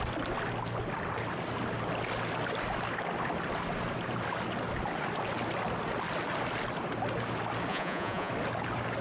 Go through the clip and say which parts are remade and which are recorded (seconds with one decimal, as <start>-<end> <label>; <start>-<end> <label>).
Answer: 0.0-7.7 recorded; 7.7-8.3 remade; 8.3-9.0 recorded